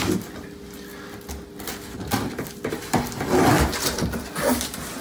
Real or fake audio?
real